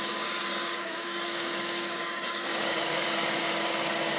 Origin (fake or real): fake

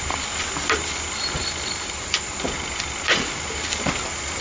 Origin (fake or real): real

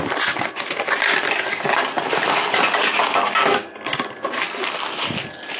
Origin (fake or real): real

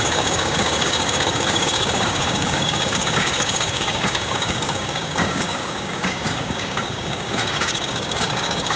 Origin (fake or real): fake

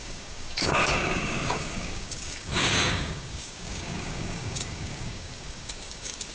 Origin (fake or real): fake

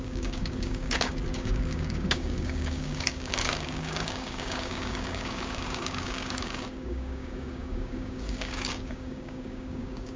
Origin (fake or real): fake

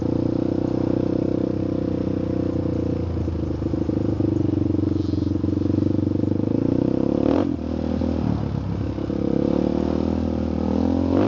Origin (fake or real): real